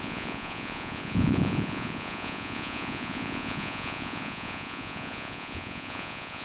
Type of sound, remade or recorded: remade